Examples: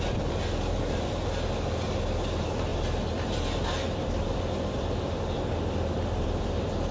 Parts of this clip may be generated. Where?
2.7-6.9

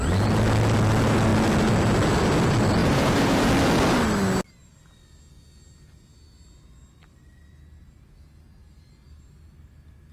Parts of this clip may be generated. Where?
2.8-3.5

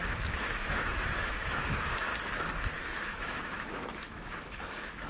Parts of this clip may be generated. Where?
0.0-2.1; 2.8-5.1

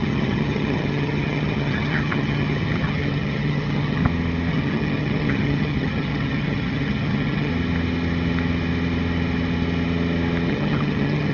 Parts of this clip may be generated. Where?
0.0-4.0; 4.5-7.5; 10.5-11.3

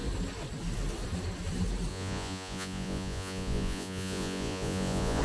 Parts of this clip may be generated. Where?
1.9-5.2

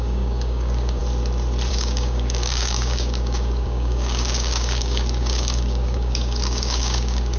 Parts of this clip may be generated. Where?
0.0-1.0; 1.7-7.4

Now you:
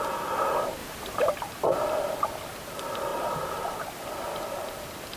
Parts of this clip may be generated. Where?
0.8-1.3; 3.1-3.9; 4.3-5.2

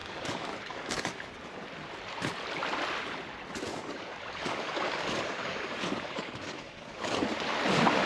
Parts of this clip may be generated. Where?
0.0-1.5; 3.7-7.6